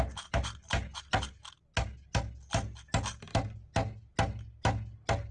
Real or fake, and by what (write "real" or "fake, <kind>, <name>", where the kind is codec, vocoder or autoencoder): real